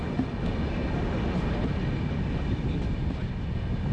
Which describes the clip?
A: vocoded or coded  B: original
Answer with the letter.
B